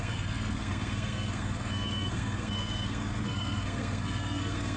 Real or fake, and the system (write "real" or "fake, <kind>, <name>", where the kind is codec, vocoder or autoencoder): fake, codec, SNAC